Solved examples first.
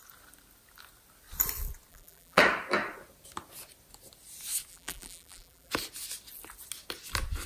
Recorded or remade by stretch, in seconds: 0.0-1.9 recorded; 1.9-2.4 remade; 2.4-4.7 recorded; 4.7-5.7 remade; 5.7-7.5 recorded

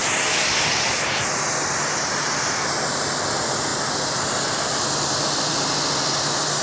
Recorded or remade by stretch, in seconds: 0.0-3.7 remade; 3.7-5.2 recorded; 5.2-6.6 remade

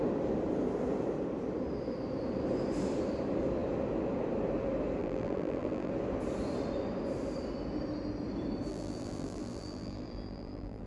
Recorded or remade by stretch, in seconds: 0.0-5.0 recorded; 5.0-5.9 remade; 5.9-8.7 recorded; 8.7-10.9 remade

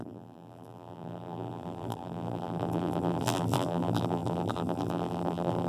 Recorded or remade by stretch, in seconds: 0.0-5.7 remade